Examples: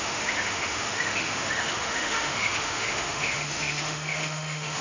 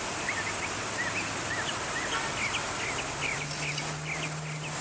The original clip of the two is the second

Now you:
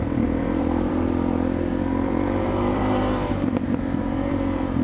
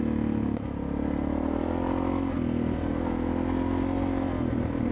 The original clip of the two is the second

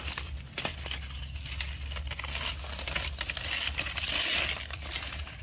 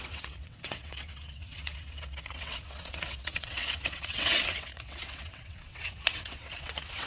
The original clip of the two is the first